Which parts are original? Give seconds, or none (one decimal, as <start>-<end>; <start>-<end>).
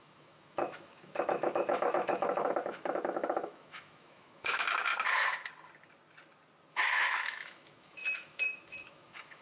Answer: 4.9-6.7